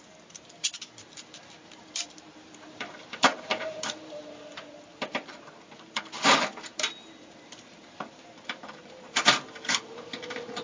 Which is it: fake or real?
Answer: fake